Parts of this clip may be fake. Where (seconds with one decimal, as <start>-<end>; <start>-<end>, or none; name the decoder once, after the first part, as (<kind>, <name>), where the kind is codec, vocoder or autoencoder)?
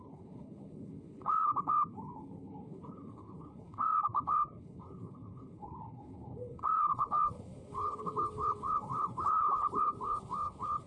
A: 0.0-10.9 (codec, HILCodec)